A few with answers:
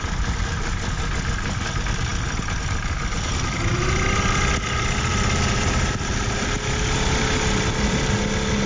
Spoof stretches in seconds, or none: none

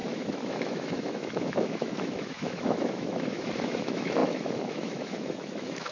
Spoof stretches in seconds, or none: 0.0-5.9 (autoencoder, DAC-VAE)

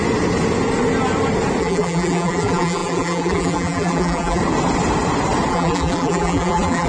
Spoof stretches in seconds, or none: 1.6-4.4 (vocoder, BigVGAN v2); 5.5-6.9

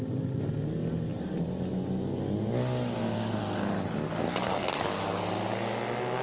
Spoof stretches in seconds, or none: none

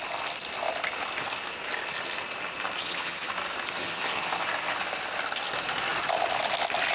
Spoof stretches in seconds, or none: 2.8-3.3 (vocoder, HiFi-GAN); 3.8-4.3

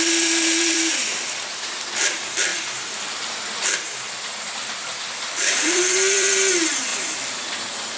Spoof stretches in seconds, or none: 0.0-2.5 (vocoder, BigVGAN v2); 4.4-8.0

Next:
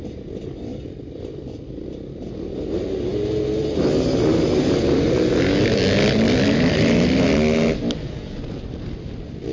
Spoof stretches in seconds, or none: none

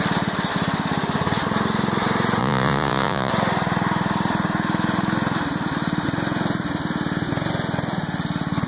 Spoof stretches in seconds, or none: 2.4-3.3 (vocoder, Vocos)